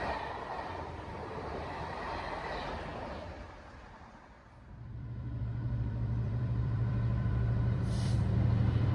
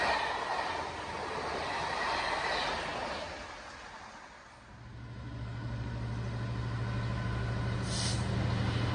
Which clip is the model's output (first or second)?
first